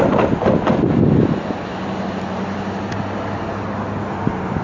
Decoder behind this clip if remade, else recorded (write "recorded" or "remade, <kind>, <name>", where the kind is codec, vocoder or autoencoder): recorded